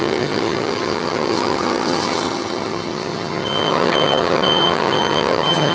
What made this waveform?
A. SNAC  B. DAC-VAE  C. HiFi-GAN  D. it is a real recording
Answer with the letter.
C